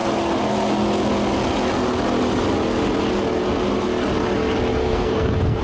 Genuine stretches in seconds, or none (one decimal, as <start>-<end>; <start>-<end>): 0.0-4.8